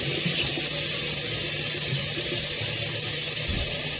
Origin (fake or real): real